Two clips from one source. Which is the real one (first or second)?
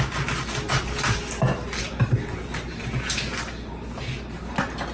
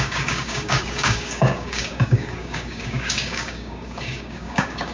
first